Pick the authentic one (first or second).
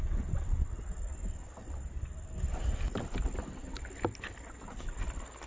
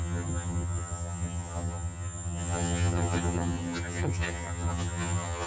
first